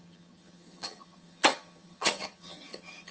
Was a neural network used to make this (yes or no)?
yes